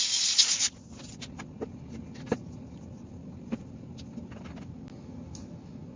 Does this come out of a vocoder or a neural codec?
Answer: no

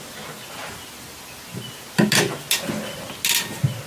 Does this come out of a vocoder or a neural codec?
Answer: no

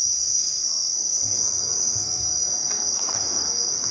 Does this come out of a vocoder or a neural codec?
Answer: yes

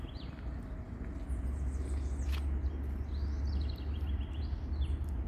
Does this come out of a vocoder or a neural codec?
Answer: no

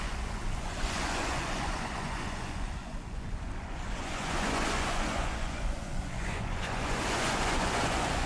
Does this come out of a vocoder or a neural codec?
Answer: yes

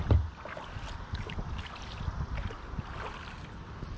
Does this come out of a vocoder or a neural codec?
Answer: no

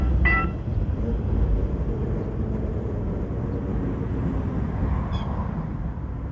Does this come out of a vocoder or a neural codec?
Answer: no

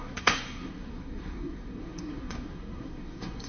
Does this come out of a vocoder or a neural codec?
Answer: yes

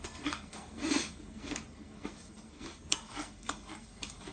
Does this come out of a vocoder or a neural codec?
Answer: yes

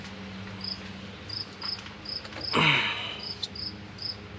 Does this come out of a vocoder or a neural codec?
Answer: no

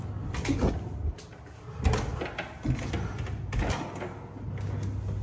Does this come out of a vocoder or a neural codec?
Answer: no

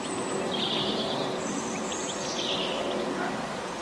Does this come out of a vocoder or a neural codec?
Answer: no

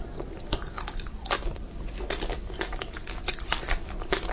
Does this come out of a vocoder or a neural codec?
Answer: no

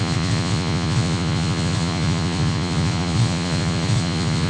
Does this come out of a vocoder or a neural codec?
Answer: yes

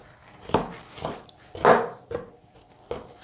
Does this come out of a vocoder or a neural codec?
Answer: no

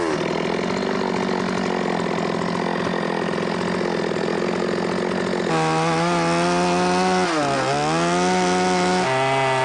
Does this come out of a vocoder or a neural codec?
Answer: no